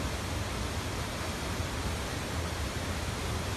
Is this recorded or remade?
recorded